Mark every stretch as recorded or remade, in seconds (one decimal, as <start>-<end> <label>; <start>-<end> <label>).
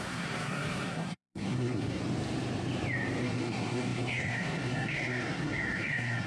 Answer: 0.0-2.0 remade; 2.0-3.2 recorded; 3.2-6.3 remade